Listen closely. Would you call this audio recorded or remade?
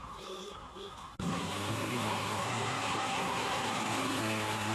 remade